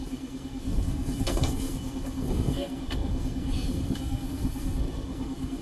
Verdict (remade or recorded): remade